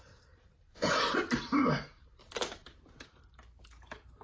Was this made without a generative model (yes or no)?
no